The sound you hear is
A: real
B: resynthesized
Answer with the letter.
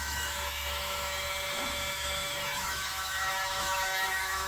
B